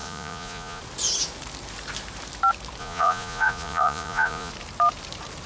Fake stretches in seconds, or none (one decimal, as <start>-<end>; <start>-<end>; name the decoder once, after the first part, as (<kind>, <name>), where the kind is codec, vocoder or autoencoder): 0.0-0.8 (vocoder, Vocos); 2.8-4.5